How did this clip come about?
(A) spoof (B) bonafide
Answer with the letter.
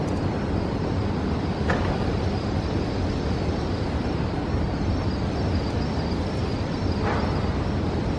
B